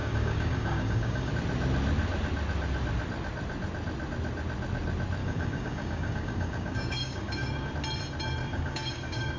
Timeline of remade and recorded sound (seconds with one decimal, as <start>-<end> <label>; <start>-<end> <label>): 0.0-1.3 remade; 1.3-5.2 recorded; 5.2-7.7 remade; 7.7-8.4 recorded; 8.4-9.4 remade